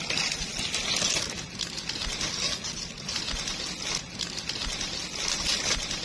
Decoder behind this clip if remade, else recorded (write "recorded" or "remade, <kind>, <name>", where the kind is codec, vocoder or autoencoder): recorded